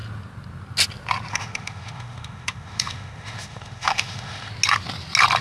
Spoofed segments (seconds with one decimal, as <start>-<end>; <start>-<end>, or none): 1.3-4.5